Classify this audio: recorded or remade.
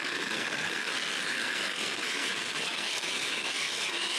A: remade